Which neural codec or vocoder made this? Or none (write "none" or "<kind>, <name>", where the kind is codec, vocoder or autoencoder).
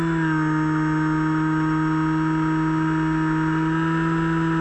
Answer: none